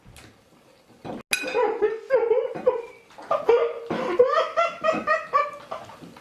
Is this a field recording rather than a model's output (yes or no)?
yes